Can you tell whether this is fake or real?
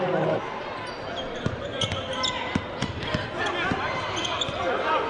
real